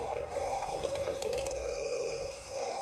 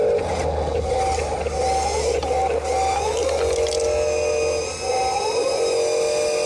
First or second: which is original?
second